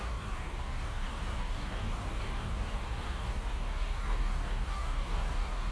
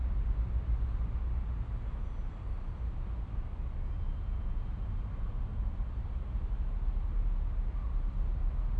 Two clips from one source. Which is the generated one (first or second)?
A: first